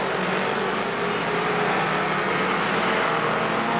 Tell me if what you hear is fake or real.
real